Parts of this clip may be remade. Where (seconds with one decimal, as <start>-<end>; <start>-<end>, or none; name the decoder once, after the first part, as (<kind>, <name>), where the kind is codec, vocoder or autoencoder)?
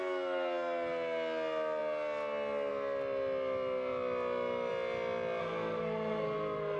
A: 5.4-6.8 (codec, SNAC)